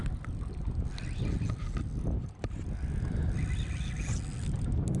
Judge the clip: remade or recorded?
recorded